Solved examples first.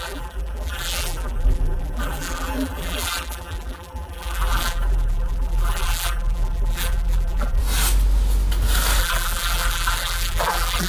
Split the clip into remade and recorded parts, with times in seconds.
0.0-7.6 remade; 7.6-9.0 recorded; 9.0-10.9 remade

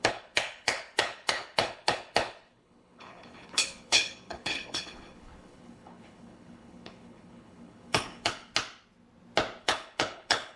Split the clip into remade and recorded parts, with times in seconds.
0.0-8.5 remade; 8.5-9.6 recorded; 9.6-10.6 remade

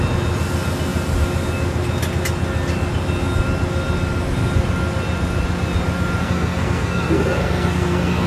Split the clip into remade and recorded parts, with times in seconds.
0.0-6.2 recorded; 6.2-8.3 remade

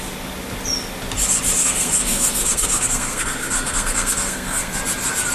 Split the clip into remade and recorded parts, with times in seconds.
0.0-1.6 recorded; 1.6-4.8 remade; 4.8-5.3 recorded

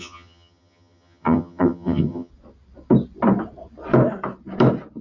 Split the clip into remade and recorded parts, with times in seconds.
0.0-2.3 remade; 2.3-5.0 recorded

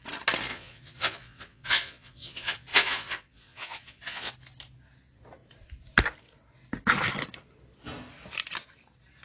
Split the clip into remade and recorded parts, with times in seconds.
0.0-0.5 recorded; 0.5-4.3 remade; 4.3-9.2 recorded

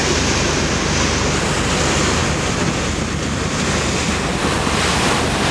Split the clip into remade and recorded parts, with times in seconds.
0.0-5.5 recorded

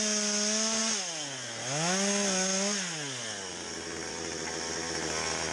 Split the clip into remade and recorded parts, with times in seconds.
0.0-5.5 recorded